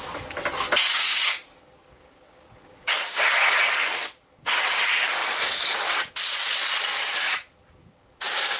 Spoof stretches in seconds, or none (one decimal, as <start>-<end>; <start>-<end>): 0.8-3.3; 7.8-8.6